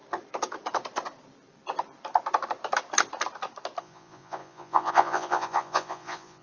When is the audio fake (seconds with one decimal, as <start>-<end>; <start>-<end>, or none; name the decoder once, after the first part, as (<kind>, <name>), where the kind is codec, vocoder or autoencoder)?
3.8-6.4 (vocoder, Vocos)